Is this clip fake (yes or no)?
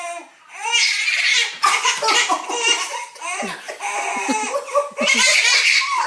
yes